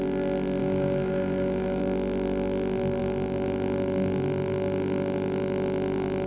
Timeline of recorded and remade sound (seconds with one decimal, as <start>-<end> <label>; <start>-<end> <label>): 0.0-0.6 recorded; 0.6-1.8 remade; 1.8-6.3 recorded